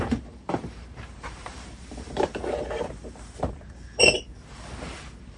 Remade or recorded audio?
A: remade